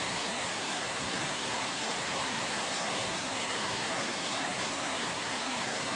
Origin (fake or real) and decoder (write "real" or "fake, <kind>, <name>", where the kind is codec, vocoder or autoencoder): fake, codec, SNAC